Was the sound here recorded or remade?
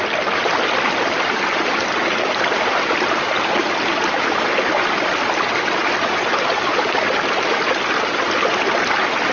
recorded